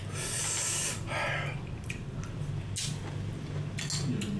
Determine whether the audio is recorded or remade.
recorded